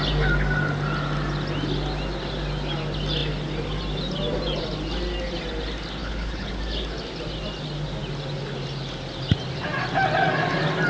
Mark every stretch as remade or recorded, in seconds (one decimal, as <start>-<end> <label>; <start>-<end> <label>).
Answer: 0.0-6.0 recorded; 6.0-6.6 remade; 6.6-10.9 recorded